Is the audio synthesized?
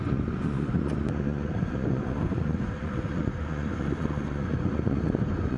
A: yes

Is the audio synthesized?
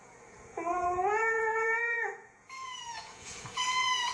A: yes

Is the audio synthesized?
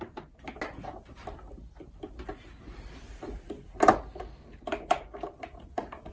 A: no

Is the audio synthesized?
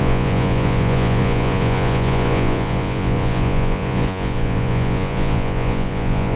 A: yes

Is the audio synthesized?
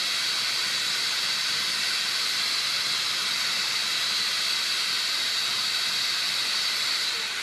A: no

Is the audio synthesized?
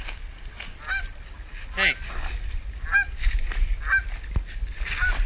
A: no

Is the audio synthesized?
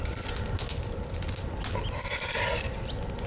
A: no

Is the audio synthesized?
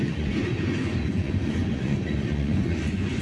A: yes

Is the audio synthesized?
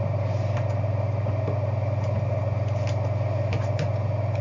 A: no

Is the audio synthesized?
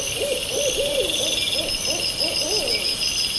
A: no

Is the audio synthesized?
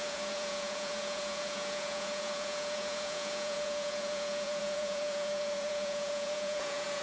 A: yes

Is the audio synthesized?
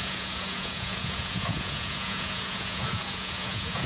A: yes